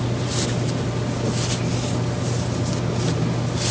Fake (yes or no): no